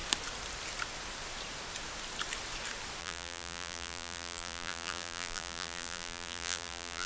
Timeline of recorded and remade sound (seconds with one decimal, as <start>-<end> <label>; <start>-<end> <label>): 0.0-3.0 recorded; 3.0-7.1 remade